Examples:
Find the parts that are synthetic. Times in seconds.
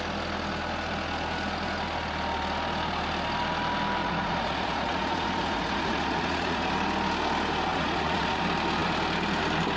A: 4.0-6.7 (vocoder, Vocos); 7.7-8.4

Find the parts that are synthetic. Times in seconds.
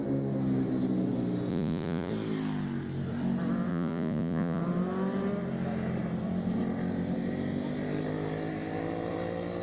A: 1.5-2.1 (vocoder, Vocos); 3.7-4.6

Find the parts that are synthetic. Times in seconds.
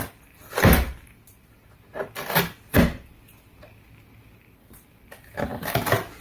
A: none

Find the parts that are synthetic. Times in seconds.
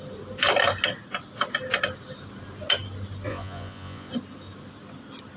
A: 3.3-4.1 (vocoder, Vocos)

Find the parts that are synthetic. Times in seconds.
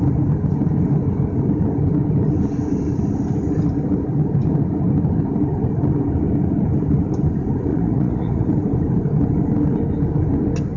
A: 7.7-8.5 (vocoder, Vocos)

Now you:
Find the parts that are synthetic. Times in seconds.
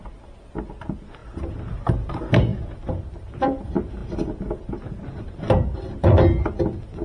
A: none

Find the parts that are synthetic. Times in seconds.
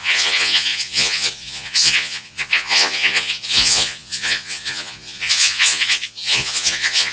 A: 0.0-7.1 (vocoder, Vocos)